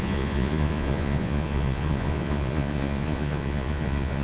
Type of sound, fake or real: fake